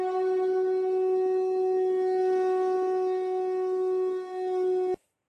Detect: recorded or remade recorded